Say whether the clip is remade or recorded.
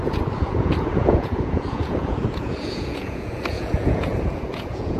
remade